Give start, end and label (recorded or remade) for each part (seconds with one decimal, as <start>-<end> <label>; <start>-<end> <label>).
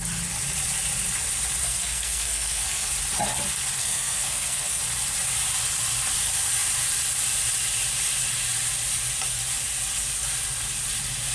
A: 0.0-1.6 recorded; 1.6-2.9 remade; 2.9-3.8 recorded; 3.8-4.8 remade; 4.8-11.3 recorded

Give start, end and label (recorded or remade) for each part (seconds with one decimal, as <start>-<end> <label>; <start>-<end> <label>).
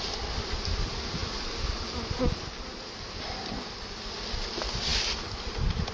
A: 0.0-5.9 recorded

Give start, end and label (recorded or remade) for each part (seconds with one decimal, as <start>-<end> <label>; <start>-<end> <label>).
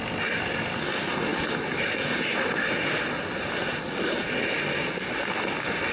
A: 0.0-5.9 recorded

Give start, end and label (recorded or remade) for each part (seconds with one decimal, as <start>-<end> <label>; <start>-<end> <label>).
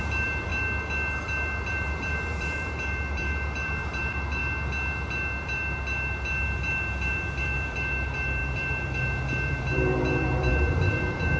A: 0.0-0.5 remade; 0.5-1.7 recorded; 1.7-4.4 remade; 4.4-7.1 recorded; 7.1-11.4 remade